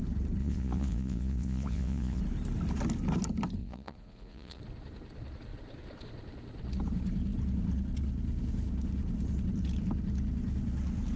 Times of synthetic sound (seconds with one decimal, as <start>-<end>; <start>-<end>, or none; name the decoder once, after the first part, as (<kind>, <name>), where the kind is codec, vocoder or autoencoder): 0.4-2.2 (vocoder, Vocos); 3.6-4.6